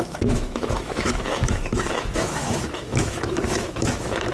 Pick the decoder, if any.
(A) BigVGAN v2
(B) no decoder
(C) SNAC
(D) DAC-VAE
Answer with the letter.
D